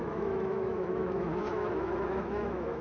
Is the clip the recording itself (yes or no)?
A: no